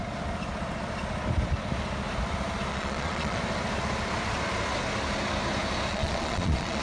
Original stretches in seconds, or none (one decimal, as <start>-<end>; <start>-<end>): 0.0-2.7; 3.4-5.9